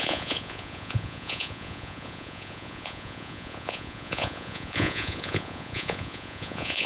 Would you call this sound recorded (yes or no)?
no